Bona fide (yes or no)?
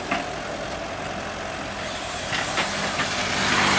yes